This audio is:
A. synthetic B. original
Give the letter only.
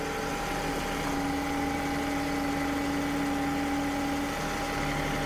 B